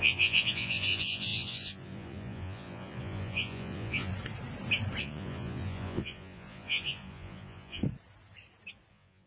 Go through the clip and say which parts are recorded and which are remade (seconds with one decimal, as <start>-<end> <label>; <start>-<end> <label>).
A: 0.0-4.1 remade; 4.1-5.0 recorded; 5.0-7.8 remade; 7.8-8.9 recorded; 8.9-9.3 remade